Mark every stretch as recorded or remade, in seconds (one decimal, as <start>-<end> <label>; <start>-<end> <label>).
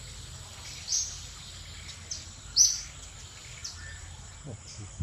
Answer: 0.0-5.0 remade